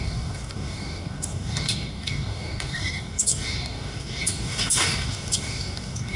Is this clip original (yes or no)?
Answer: no